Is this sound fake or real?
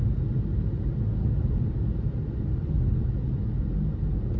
real